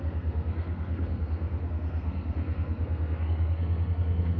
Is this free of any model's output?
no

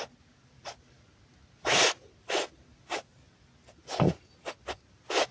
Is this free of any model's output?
yes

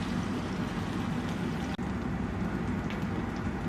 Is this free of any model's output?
yes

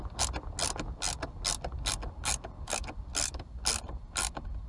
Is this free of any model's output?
yes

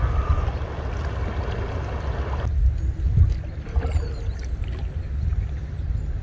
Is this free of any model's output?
yes